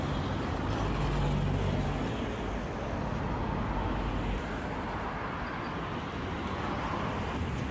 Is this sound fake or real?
real